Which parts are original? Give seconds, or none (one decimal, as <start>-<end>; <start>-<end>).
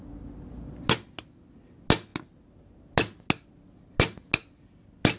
0.0-5.2